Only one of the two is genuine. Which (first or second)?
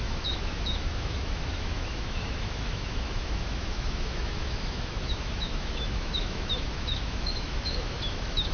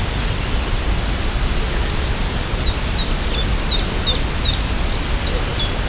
second